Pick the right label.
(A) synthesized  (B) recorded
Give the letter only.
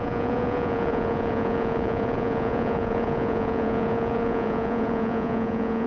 A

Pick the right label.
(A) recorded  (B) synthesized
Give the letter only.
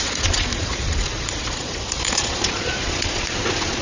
B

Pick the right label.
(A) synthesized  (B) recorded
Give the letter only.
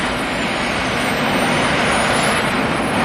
B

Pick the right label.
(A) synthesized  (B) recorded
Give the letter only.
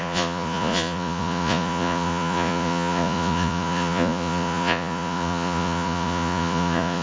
A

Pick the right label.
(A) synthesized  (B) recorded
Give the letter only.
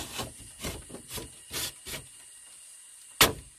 B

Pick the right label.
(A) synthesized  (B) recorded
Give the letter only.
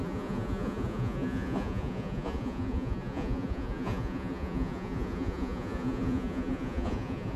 A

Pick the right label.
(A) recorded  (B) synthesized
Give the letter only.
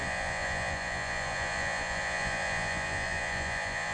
B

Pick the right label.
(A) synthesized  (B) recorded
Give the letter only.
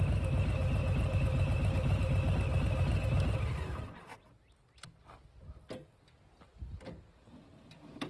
B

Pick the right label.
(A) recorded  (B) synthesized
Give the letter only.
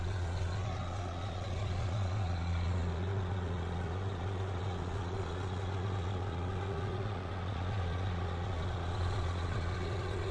B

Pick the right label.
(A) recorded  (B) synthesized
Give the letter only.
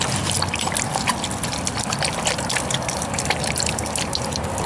A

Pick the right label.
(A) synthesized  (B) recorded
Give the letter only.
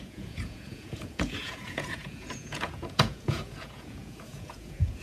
A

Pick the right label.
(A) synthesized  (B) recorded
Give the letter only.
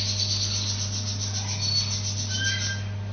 B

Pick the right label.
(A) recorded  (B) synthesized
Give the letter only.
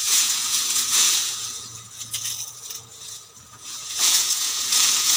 B